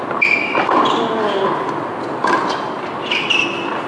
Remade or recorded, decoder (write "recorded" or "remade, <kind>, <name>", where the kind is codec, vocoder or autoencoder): recorded